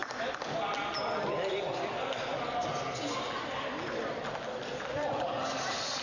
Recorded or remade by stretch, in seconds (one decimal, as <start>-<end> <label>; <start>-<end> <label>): 0.0-6.0 recorded